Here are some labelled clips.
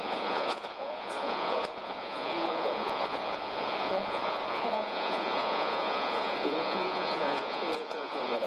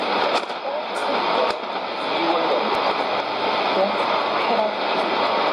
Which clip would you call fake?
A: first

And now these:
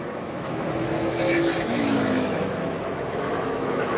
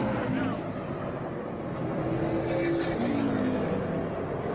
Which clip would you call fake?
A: first